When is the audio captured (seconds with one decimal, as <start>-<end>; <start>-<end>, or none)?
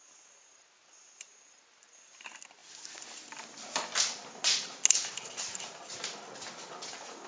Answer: 0.0-7.3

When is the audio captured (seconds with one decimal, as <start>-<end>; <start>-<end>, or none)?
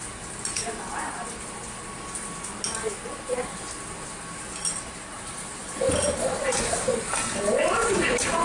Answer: 0.0-8.4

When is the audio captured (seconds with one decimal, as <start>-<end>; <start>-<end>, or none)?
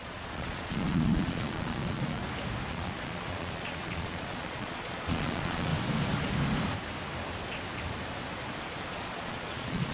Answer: 2.2-2.7; 5.7-8.9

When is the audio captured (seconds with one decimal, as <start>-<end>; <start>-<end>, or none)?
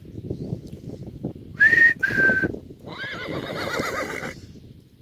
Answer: 0.0-5.0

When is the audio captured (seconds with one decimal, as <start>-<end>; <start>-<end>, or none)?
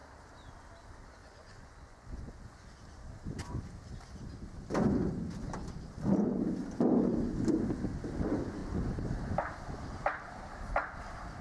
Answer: 0.0-1.2; 2.7-11.4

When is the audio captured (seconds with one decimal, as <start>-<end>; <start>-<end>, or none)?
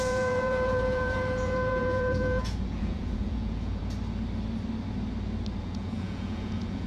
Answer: 3.8-5.6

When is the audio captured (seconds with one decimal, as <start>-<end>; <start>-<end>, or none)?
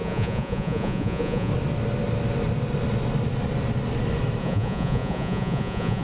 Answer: 1.5-4.4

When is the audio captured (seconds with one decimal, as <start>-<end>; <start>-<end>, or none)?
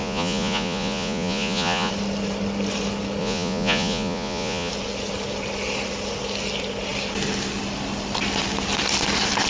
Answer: 1.9-3.2; 4.7-9.5